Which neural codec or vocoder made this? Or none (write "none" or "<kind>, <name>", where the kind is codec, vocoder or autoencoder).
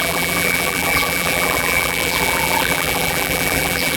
vocoder, BigVGAN v2